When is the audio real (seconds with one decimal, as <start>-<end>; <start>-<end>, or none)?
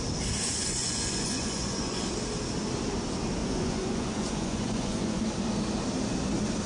0.0-0.6; 2.0-3.4; 5.2-6.7